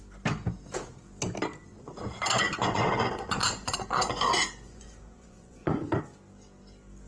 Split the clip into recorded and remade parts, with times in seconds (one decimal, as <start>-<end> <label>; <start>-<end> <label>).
0.0-1.7 recorded; 1.7-6.0 remade; 6.0-7.1 recorded